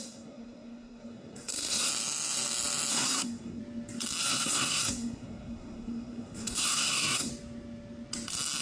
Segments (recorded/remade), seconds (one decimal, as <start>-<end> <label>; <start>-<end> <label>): 0.0-1.9 remade; 1.9-2.9 recorded; 2.9-3.6 remade; 3.6-4.2 recorded; 4.2-7.3 remade; 7.3-8.6 recorded